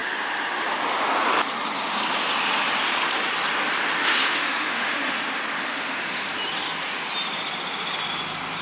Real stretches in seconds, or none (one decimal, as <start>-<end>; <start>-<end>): 0.0-4.0; 5.1-5.6; 6.3-8.6